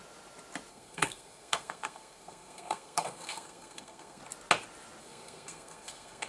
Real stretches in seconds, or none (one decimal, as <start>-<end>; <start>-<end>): 0.0-0.7; 4.2-5.0